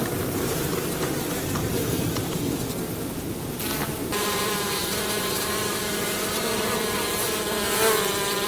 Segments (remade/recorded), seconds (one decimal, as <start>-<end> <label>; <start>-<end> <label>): 0.0-1.6 recorded; 1.6-2.4 remade; 2.4-3.8 recorded; 3.8-7.3 remade; 7.3-8.5 recorded

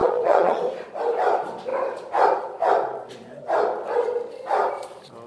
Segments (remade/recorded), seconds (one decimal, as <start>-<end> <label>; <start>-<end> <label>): 0.0-0.6 remade; 0.6-5.3 recorded

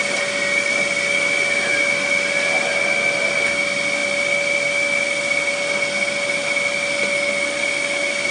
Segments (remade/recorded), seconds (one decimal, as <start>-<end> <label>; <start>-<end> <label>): 0.0-8.3 recorded

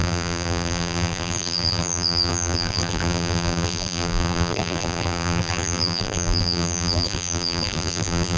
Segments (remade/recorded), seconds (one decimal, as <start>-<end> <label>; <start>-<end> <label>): 0.0-8.4 remade

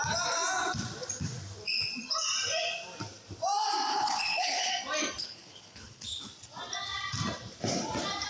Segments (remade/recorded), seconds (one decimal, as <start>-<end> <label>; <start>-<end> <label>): 0.0-3.9 recorded; 3.9-4.7 remade; 4.7-5.2 recorded; 5.2-6.3 remade; 6.3-8.3 recorded

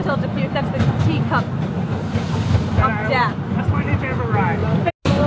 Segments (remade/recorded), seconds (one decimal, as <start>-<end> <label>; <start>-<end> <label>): 0.0-3.0 recorded; 3.0-3.6 remade; 3.6-5.3 recorded

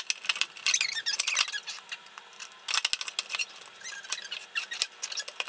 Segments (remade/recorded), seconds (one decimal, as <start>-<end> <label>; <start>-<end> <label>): 0.0-5.5 recorded